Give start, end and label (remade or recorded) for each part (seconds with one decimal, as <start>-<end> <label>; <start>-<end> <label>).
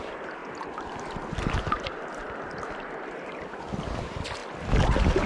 0.0-5.3 recorded